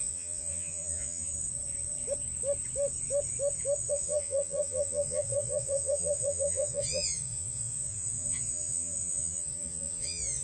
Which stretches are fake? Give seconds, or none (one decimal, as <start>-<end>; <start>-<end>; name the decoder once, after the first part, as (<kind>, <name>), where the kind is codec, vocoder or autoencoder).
0.0-1.3 (vocoder, Vocos); 3.9-10.4